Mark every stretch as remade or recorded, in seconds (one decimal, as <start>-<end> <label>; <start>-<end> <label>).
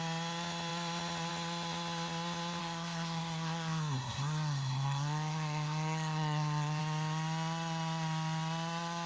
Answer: 0.0-2.6 recorded; 2.6-6.8 remade; 6.8-9.1 recorded